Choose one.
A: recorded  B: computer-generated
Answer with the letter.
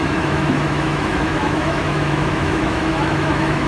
B